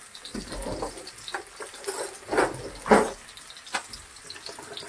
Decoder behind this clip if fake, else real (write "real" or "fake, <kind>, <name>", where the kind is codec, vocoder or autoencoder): real